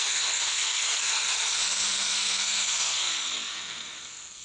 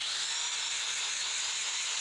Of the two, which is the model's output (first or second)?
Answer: first